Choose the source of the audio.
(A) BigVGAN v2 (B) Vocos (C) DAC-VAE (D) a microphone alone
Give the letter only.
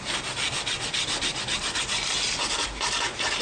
D